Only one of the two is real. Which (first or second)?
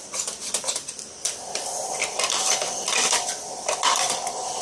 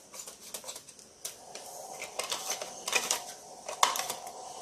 second